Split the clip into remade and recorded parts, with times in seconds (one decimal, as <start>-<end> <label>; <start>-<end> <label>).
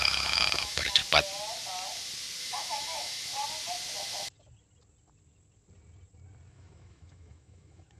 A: 0.0-1.0 remade; 1.0-2.4 recorded; 2.4-3.3 remade; 3.3-6.5 recorded; 6.5-8.0 remade